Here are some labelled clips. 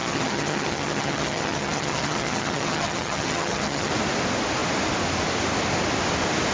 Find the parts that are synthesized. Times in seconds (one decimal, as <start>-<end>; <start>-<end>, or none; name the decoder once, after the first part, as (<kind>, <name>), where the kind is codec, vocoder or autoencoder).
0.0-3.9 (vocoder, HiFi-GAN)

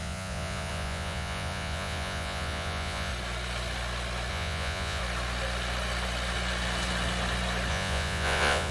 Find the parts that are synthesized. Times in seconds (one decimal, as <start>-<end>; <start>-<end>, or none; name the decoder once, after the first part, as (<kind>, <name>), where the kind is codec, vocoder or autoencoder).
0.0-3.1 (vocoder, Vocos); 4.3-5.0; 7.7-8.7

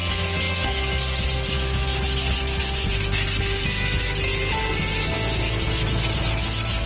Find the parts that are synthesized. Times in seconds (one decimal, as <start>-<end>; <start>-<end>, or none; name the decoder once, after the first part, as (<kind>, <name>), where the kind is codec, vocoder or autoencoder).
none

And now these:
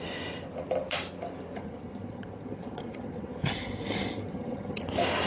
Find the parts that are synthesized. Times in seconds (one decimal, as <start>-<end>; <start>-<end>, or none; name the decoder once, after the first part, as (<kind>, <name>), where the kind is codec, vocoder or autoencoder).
1.6-4.8 (vocoder, HiFi-GAN)

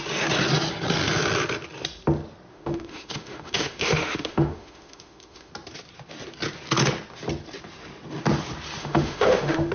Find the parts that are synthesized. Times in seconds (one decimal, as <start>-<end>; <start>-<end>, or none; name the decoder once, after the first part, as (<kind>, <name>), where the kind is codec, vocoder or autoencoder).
2.5-5.5 (autoencoder, DAC-VAE); 8.8-9.7